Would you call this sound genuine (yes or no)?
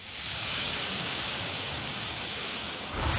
no